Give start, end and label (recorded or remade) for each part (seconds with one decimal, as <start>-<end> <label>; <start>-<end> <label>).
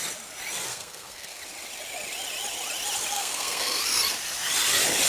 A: 0.0-0.7 recorded; 0.7-1.4 remade; 1.4-3.1 recorded; 3.1-3.8 remade; 3.8-5.1 recorded